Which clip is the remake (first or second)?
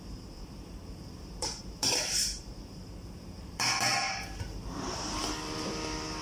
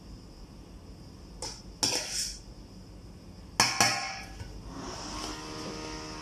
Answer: first